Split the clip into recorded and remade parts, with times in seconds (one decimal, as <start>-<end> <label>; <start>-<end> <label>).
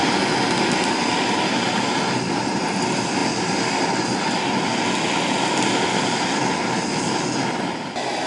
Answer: 0.0-8.3 recorded